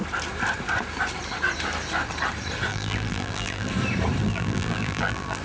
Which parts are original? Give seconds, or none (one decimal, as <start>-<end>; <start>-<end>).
0.0-2.7; 3.7-4.2